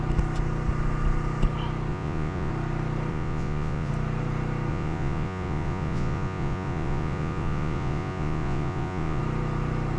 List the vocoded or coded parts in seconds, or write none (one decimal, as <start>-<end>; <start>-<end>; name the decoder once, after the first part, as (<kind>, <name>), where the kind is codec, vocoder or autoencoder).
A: 1.9-2.5 (vocoder, Vocos); 3.1-3.9; 4.7-9.2